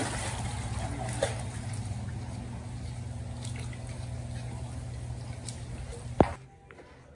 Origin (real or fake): real